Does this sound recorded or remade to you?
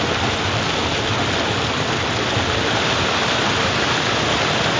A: recorded